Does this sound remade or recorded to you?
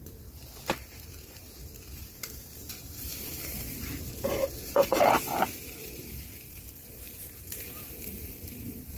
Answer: remade